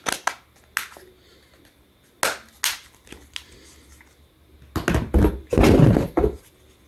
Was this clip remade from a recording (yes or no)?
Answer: no